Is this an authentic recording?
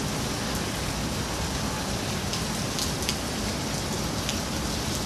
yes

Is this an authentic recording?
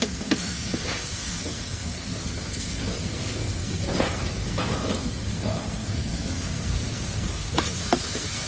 no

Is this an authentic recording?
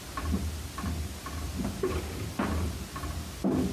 yes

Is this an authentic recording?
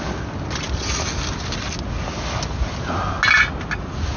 yes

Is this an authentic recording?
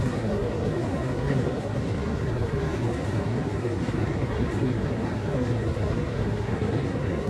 no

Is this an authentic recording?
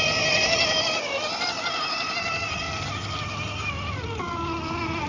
yes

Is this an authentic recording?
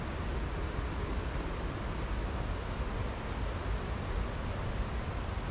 yes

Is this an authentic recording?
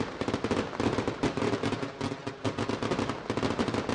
yes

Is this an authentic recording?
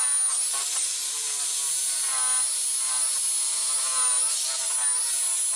yes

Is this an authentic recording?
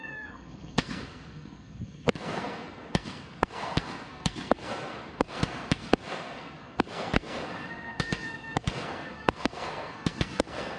no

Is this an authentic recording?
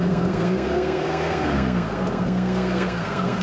no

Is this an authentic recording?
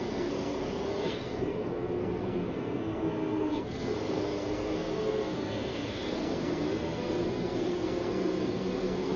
no